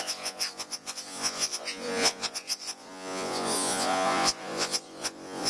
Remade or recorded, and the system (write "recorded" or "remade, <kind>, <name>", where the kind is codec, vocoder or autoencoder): remade, vocoder, Vocos